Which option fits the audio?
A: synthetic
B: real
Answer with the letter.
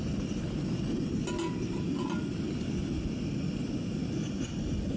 B